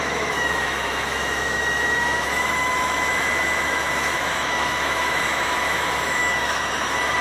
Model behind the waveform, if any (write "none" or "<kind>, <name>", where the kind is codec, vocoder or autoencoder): autoencoder, DAC-VAE